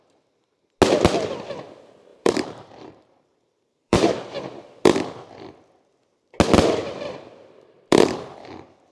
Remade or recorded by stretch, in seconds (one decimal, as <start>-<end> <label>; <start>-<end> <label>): 0.0-2.1 recorded; 2.1-4.1 remade; 4.1-6.8 recorded; 6.8-7.4 remade; 7.4-8.9 recorded